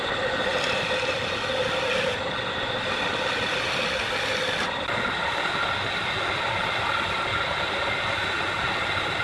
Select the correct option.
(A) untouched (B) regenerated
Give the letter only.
A